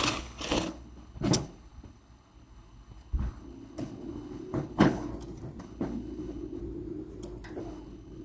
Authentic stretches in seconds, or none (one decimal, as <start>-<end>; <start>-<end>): 5.1-5.6; 6.6-7.6